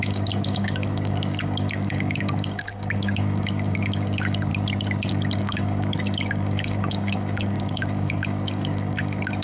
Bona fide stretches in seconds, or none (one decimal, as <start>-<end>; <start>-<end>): 4.5-5.1